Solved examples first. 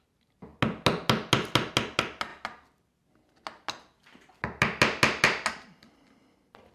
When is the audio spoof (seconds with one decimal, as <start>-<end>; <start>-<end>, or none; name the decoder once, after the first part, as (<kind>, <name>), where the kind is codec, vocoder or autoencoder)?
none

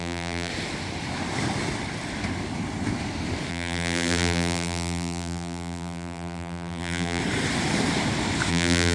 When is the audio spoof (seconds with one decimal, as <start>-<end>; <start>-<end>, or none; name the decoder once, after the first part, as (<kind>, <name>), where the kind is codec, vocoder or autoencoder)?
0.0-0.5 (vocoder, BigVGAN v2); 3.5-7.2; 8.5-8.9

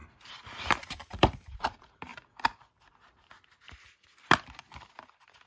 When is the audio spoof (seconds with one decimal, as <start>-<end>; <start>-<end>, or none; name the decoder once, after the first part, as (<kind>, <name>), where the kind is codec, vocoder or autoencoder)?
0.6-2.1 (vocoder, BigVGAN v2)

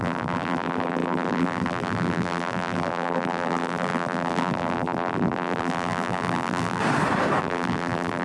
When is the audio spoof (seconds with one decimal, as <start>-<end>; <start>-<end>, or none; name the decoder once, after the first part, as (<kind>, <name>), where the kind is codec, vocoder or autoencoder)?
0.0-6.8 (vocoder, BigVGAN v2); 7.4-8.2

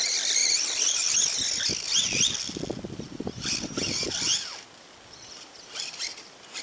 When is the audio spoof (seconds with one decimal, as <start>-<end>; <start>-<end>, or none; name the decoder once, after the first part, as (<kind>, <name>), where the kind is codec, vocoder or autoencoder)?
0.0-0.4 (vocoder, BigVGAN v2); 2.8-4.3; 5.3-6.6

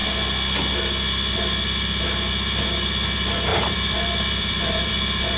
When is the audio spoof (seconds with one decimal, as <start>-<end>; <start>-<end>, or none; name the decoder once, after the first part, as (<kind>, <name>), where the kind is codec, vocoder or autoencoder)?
3.5-4.9 (vocoder, BigVGAN v2)

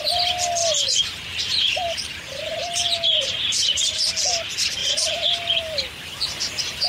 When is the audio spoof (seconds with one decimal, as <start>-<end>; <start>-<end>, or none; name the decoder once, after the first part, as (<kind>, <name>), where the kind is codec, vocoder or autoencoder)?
0.6-4.1 (vocoder, BigVGAN v2); 4.8-6.9